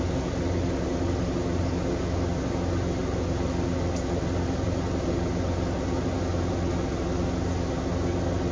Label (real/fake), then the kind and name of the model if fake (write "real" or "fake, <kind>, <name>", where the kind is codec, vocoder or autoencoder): real